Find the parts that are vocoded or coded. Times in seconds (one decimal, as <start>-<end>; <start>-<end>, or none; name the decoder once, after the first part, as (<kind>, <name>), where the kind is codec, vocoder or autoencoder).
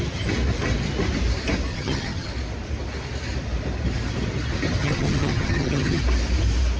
1.7-2.3 (vocoder, HiFi-GAN); 4.8-6.0